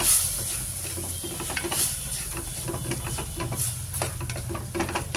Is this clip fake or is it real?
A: real